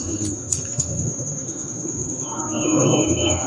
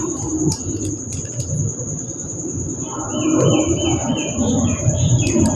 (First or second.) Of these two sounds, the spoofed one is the first